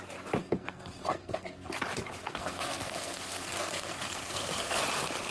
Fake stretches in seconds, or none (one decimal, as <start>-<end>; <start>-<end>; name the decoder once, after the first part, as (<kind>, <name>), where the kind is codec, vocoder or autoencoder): 0.4-1.7 (codec, SNAC); 2.2-4.8